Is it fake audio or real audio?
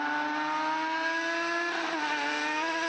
real